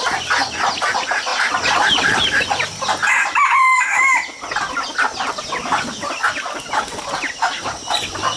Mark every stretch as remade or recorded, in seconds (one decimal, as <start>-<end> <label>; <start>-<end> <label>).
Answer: 0.0-8.4 recorded